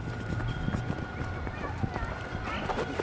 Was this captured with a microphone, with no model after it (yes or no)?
yes